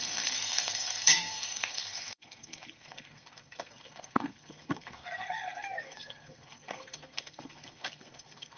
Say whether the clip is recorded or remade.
remade